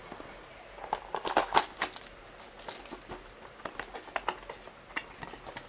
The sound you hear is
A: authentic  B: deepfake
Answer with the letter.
A